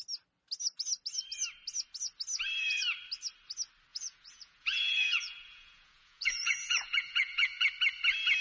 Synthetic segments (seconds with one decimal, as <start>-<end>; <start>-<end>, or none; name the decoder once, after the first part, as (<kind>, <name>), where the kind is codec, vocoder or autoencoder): 3.9-7.7 (vocoder, Vocos)